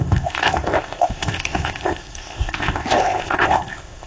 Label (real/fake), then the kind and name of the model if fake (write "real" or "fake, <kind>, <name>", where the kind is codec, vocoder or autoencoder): fake, codec, ZipCodec